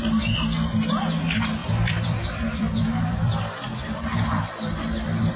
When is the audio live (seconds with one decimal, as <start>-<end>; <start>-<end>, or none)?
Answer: 0.0-1.6; 4.8-5.4